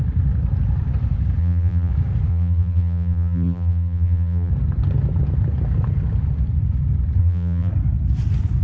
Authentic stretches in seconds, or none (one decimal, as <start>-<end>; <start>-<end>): 0.0-1.4; 1.9-2.3; 4.5-7.2; 7.7-8.6